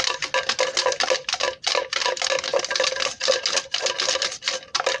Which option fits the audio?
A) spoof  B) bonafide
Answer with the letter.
B